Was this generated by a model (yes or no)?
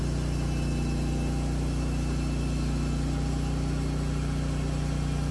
no